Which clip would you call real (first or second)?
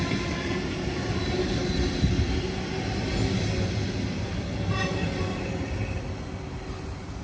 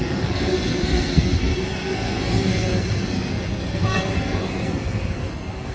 first